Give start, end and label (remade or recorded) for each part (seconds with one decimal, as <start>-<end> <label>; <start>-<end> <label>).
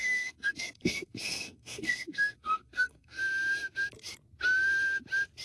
0.0-3.2 remade; 3.2-5.4 recorded